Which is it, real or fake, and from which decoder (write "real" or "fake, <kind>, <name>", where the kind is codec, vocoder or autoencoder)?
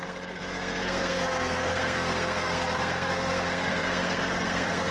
fake, codec, SNAC